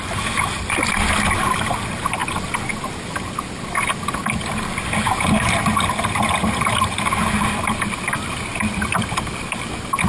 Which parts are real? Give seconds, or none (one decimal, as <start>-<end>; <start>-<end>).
0.0-10.1